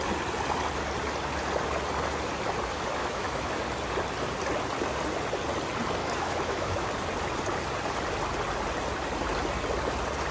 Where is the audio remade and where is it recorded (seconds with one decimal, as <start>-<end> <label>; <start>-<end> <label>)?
0.0-3.0 recorded; 3.0-3.5 remade; 3.5-6.0 recorded; 6.0-6.9 remade; 6.9-10.3 recorded